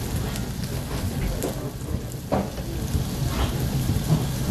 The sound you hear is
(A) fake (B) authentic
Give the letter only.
B